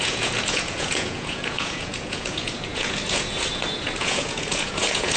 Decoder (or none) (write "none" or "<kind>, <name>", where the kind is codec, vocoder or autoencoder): vocoder, Vocos